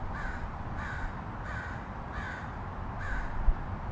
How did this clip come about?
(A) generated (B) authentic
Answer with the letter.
B